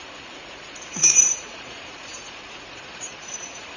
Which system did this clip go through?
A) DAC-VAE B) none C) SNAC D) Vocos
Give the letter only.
D